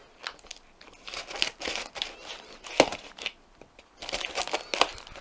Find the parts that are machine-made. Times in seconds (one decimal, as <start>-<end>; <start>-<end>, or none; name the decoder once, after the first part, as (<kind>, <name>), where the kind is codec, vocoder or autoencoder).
none